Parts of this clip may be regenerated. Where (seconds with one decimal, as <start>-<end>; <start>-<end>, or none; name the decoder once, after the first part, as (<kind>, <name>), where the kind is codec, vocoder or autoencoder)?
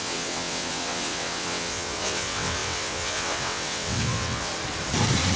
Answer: 0.0-4.5 (vocoder, WaveNeXt)